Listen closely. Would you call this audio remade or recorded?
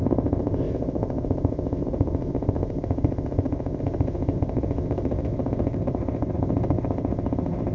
remade